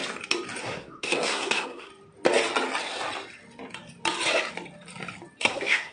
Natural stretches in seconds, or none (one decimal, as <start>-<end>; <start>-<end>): 0.0-0.6; 1.9-5.4